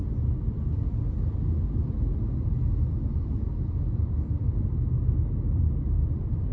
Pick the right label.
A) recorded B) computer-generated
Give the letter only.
A